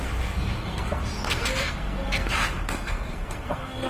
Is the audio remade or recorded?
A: remade